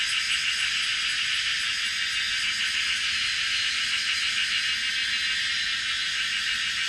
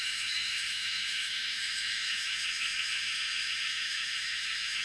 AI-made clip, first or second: second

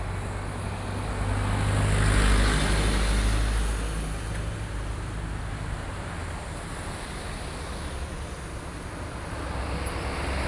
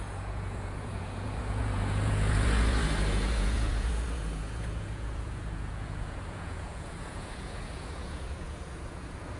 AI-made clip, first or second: second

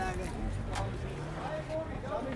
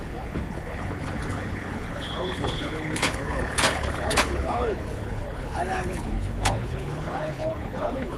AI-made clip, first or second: second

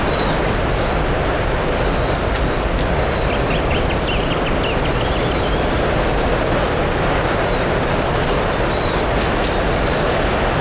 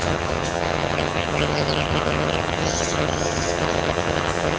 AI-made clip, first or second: second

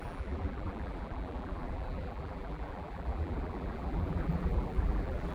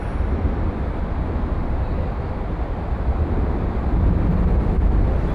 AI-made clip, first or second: first